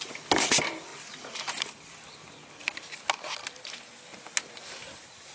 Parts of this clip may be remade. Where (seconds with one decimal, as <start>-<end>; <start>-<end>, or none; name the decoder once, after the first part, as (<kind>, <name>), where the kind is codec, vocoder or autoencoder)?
none